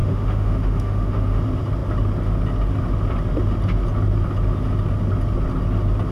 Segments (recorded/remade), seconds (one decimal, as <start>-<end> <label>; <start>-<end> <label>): 0.0-1.4 remade; 1.4-6.1 recorded